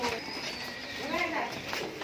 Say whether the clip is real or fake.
fake